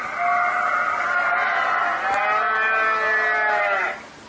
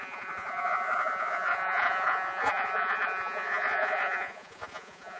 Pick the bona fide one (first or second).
first